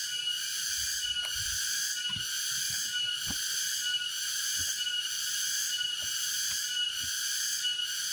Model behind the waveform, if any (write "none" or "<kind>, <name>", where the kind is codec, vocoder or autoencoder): none